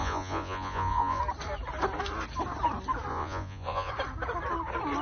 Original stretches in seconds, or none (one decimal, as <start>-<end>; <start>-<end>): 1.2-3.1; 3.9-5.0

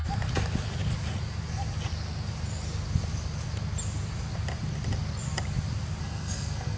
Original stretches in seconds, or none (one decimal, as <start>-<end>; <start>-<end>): 0.0-6.0

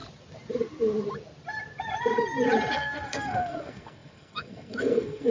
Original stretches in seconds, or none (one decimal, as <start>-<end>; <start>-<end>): 0.0-2.7

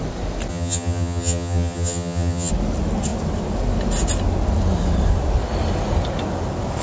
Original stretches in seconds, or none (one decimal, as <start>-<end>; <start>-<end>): 0.0-0.5; 2.5-6.8

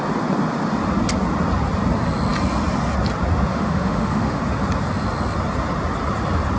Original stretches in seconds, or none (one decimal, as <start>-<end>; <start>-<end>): 0.0-3.5; 4.4-6.6